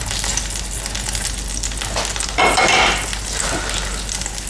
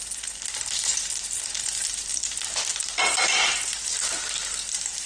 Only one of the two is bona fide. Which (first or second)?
first